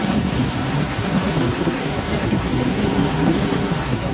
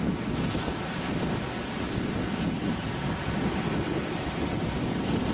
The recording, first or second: second